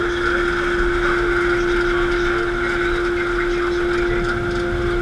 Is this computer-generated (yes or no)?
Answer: no